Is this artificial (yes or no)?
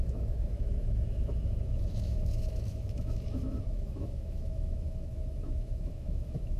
yes